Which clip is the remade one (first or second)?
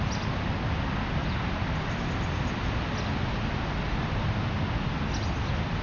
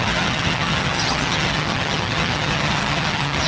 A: second